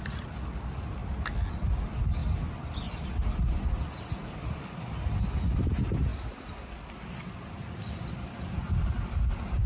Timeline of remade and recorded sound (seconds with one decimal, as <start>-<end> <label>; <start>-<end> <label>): 0.0-9.7 recorded